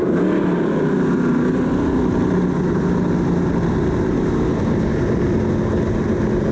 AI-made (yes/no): no